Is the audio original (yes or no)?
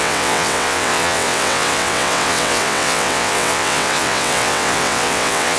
no